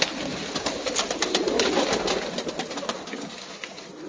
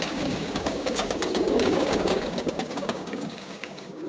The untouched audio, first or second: first